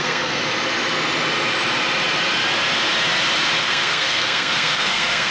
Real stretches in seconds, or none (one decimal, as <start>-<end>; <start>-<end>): 0.4-3.6